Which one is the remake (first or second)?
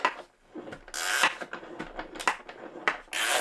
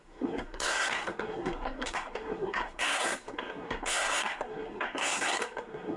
second